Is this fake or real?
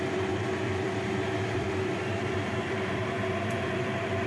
fake